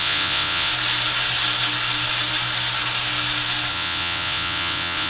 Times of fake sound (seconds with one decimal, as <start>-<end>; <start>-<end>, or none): 0.0-0.7; 3.7-5.1